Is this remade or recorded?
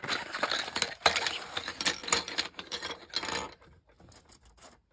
recorded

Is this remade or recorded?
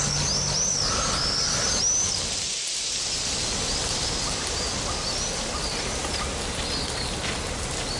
recorded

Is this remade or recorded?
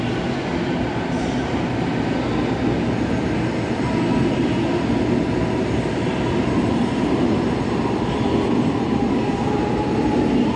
recorded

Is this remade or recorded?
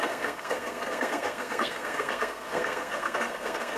remade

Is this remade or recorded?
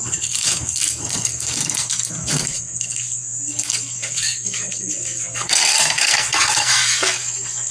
remade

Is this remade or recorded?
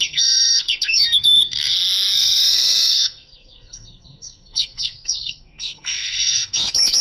remade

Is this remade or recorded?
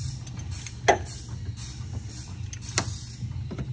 recorded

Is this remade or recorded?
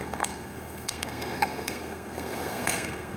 remade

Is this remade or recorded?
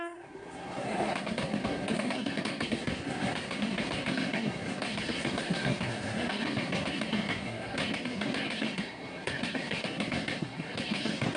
remade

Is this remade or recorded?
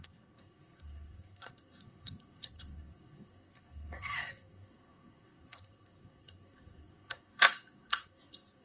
remade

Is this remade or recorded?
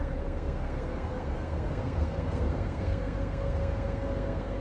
remade